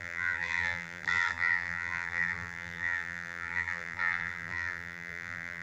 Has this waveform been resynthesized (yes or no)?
yes